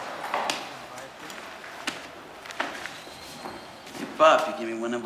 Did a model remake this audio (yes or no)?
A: no